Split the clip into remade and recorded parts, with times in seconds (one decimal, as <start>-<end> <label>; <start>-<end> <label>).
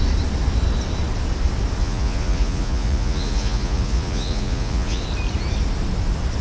0.0-1.8 recorded; 1.8-5.0 remade; 5.0-6.4 recorded